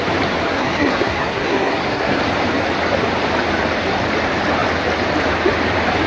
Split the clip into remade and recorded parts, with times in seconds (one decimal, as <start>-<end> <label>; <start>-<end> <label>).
0.0-0.5 recorded; 0.5-2.2 remade; 2.2-6.1 recorded